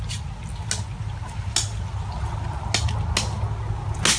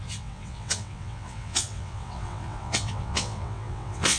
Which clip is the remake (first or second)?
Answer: second